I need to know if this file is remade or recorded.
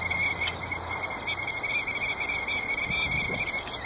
recorded